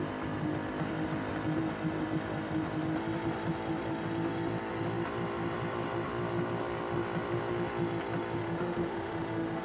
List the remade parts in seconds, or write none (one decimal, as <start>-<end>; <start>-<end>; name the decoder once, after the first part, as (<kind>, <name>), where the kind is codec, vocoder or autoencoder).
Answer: 8.4-9.6 (autoencoder, DAC-VAE)